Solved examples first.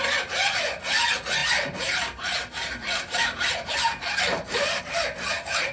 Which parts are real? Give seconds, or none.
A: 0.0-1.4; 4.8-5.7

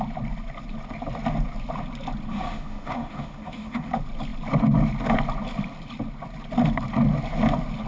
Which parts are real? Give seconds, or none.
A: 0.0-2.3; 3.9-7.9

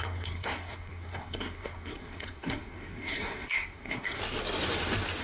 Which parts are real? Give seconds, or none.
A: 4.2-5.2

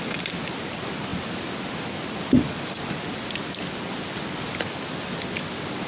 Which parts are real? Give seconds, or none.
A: 0.0-5.9

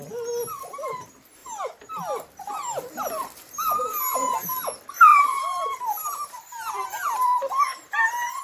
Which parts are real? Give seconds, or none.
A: 0.0-1.4; 3.8-5.1; 8.0-8.4